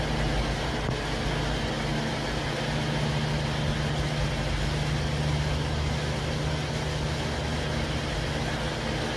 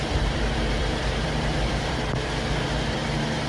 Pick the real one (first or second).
first